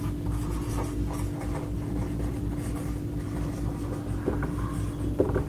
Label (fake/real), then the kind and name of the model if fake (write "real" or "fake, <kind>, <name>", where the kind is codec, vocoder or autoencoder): real